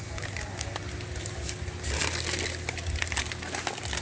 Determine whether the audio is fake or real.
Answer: real